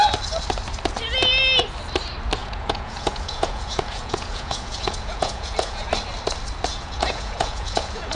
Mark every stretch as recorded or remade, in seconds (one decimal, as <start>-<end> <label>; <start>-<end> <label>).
0.0-2.4 recorded; 2.4-5.9 remade; 5.9-6.7 recorded; 6.7-8.2 remade